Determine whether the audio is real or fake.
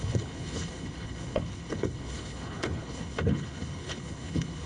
fake